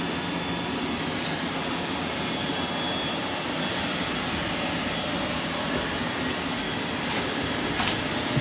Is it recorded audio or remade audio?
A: recorded